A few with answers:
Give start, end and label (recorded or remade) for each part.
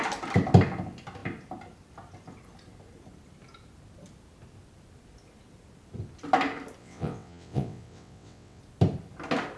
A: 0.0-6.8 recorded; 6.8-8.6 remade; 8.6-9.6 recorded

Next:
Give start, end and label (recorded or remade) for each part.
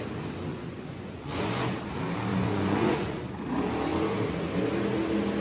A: 0.0-0.5 recorded; 0.5-1.8 remade; 1.8-2.3 recorded; 2.3-3.2 remade; 3.2-3.9 recorded; 3.9-4.5 remade; 4.5-5.4 recorded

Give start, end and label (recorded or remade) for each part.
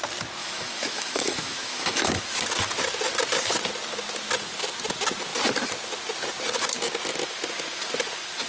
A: 0.0-0.4 recorded; 0.4-2.2 remade; 2.2-8.5 recorded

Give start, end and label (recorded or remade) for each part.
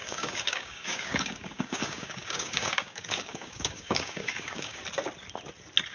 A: 0.0-4.8 remade; 4.8-5.9 recorded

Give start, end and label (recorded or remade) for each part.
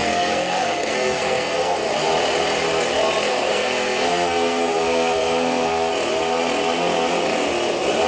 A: 0.0-1.9 remade; 1.9-3.3 recorded; 3.3-5.9 remade; 5.9-8.1 recorded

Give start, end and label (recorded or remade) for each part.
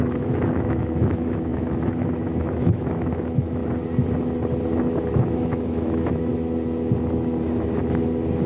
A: 0.0-3.6 remade; 3.6-5.1 recorded; 5.1-6.3 remade; 6.3-8.5 recorded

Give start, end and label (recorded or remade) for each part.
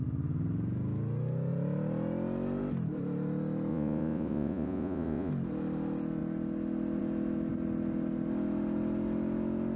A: 0.0-3.7 recorded; 3.7-5.3 remade; 5.3-9.8 recorded